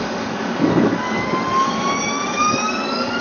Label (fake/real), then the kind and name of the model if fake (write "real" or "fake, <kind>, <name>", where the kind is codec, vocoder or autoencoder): fake, codec, DAC